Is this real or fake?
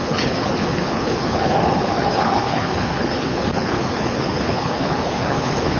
fake